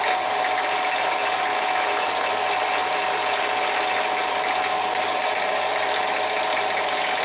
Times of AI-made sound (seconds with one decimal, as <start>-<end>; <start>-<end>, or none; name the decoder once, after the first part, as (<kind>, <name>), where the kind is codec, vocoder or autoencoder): 1.5-2.1 (autoencoder, DAC-VAE)